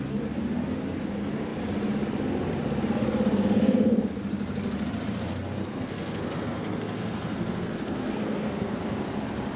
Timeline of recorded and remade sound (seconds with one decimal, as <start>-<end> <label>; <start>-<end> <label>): 0.0-3.3 recorded; 3.3-4.1 remade; 4.1-5.6 recorded; 5.6-8.8 remade; 8.8-9.6 recorded